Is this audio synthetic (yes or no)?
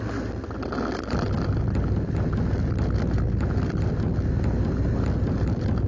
no